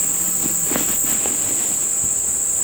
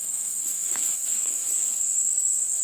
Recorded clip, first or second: first